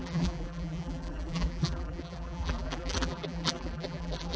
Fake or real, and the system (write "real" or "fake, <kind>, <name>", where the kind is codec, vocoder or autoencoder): fake, vocoder, BigVGAN v2